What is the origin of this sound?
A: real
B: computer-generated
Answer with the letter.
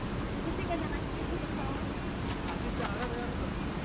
A